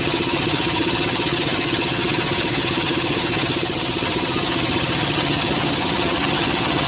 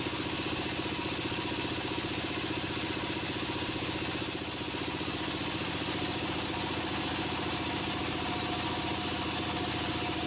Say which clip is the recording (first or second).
second